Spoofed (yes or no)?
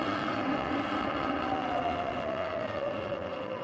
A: yes